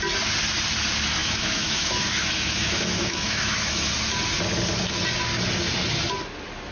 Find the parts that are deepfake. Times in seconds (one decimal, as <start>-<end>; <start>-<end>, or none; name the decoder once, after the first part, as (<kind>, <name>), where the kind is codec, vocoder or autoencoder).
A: 1.2-3.9 (autoencoder, DAC-VAE)